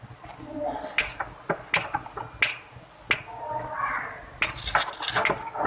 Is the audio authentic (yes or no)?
yes